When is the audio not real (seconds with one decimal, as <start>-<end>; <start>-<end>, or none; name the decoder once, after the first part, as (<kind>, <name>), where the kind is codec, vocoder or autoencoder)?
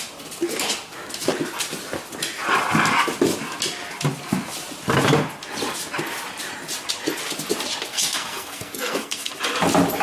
7.9-9.3 (codec, SNAC)